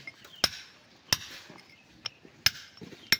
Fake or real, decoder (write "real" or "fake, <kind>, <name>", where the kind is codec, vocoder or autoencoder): real